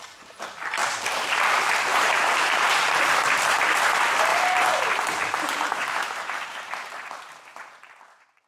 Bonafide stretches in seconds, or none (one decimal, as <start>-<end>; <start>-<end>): 0.0-0.8; 1.4-1.9; 3.1-4.3; 6.9-8.5